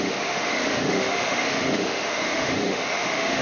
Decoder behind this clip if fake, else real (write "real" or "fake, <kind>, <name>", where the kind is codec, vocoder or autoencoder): fake, autoencoder, DAC-VAE